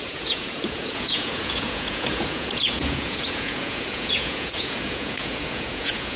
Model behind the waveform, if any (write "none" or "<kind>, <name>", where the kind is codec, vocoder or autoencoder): vocoder, Vocos